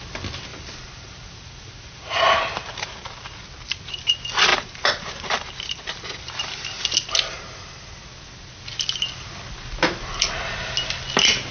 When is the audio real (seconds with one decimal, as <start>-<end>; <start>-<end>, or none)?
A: 0.0-0.5; 3.4-4.5; 5.5-11.5